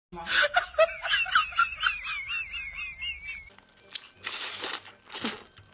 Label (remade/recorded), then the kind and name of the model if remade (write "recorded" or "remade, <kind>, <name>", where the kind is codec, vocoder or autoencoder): recorded